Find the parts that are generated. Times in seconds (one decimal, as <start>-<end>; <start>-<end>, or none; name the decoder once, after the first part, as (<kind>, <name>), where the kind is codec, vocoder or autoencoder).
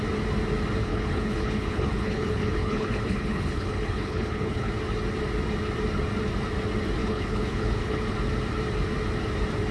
0.8-4.7 (codec, HILCodec); 7.0-8.1